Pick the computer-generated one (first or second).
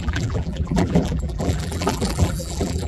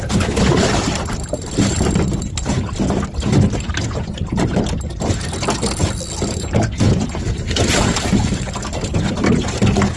first